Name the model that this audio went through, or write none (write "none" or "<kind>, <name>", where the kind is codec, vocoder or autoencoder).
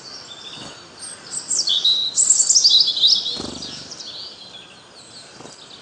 none